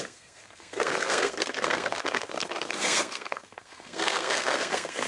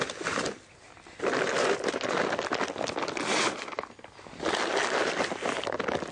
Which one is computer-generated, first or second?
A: first